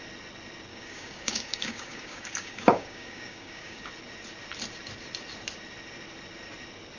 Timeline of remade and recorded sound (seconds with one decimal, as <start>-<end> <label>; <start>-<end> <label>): 0.0-0.7 recorded; 0.7-3.9 remade; 3.9-7.0 recorded